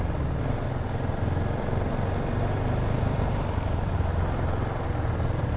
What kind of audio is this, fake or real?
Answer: real